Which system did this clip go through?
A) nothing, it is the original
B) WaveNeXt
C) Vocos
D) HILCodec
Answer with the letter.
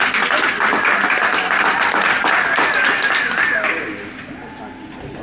A